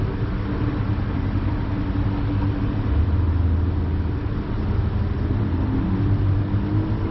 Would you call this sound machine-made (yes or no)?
no